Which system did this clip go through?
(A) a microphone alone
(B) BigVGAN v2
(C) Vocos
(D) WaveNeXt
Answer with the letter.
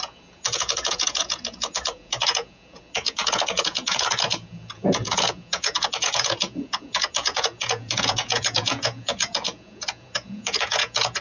C